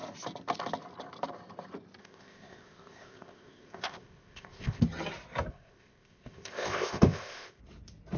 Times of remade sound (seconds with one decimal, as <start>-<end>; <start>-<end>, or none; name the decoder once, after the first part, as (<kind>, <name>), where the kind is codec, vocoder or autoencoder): 2.0-4.8 (codec, ZipCodec); 5.5-7.6

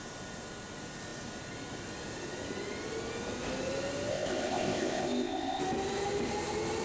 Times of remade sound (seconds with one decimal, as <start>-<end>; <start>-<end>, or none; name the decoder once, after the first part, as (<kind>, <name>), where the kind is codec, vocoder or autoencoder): 4.1-5.6 (codec, ZipCodec)

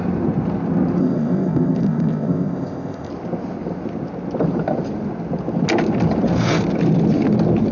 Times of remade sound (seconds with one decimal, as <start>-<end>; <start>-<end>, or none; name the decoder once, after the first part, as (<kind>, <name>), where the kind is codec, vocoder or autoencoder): 1.0-3.1 (codec, ZipCodec)

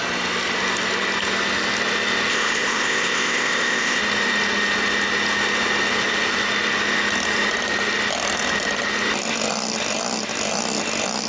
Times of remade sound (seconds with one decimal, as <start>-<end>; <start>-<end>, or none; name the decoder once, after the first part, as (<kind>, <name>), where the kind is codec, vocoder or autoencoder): 2.3-4.0 (codec, ZipCodec)

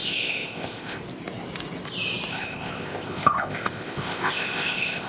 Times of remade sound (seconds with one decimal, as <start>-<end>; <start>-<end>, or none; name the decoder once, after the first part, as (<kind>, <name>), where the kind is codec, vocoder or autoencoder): 0.0-1.0 (codec, ZipCodec); 2.3-5.1

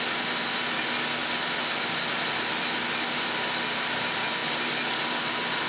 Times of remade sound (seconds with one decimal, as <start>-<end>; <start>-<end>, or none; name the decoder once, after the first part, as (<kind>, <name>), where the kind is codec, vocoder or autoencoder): none

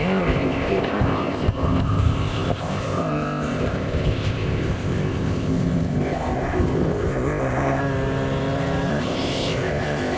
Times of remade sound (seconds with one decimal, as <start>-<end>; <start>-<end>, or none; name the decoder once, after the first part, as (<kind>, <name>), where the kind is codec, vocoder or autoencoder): 0.0-7.8 (codec, ZipCodec); 8.9-10.2